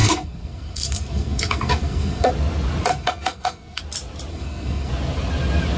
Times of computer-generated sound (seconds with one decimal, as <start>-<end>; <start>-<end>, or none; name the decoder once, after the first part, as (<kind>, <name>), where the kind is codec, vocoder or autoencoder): 0.0-2.3 (codec, SNAC); 2.9-3.8; 4.3-4.9